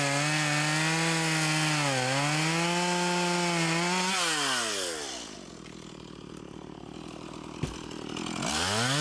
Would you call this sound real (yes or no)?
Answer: yes